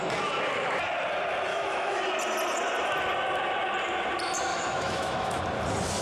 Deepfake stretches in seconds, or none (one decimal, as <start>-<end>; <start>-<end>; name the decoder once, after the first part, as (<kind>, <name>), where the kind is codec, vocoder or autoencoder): 1.5-2.0 (autoencoder, DAC-VAE); 4.5-5.4

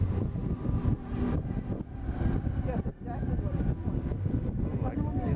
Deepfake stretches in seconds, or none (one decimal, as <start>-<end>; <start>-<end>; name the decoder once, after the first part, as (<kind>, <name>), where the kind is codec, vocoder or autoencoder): 0.4-1.5 (vocoder, BigVGAN v2)

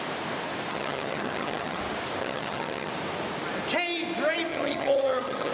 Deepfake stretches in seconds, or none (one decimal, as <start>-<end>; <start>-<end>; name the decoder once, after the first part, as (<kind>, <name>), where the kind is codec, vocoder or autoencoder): 0.7-1.8 (vocoder, HiFi-GAN); 2.2-2.9; 4.5-5.5

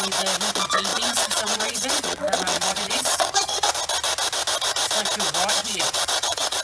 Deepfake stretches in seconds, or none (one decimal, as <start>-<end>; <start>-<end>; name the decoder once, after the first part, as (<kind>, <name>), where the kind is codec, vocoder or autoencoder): 0.9-3.7 (vocoder, WaveNeXt); 5.6-6.6

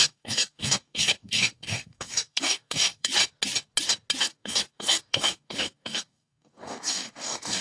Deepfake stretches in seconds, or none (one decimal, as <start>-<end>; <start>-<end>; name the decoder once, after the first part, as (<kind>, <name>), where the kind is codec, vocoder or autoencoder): 0.0-3.1 (codec, DAC); 4.2-7.6

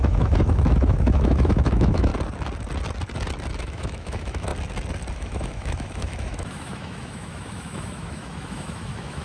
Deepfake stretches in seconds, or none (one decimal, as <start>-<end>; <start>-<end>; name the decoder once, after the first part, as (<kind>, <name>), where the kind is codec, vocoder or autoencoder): 0.0-2.1 (autoencoder, DAC-VAE); 3.6-4.5; 5.1-9.2

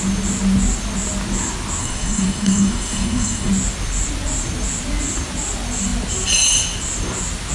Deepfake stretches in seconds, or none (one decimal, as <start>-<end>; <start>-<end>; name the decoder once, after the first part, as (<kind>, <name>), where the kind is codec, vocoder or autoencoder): 1.8-3.5 (codec, SNAC)

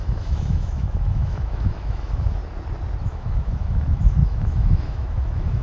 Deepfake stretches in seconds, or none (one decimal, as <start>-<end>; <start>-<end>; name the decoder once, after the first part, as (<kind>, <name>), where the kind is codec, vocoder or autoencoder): 0.0-2.4 (autoencoder, DAC-VAE); 3.0-5.6